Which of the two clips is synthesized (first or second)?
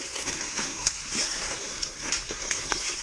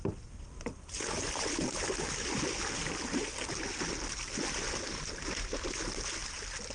first